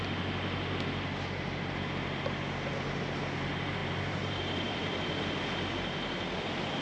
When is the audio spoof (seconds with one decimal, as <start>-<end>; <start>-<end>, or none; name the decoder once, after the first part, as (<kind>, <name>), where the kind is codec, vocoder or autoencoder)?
3.8-5.3 (vocoder, BigVGAN v2)